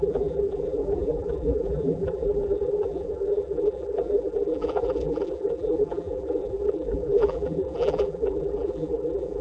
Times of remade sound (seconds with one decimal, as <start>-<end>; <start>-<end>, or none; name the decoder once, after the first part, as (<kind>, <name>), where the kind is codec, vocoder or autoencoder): 0.0-9.4 (vocoder, BigVGAN v2)